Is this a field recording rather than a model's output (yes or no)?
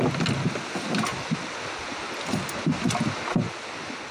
yes